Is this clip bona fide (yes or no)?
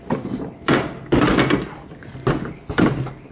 yes